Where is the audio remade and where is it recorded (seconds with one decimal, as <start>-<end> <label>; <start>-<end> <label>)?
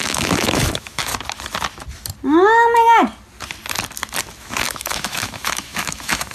0.0-1.1 remade; 1.1-4.4 recorded; 4.4-6.3 remade